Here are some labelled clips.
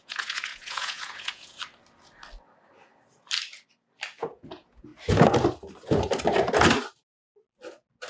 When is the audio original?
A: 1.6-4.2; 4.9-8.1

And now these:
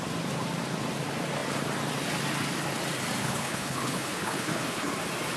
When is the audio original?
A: 0.0-3.2; 4.9-5.4

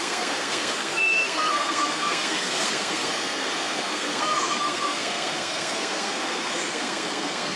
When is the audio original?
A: none

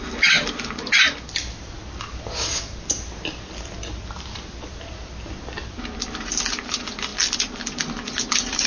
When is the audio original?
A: 0.0-8.7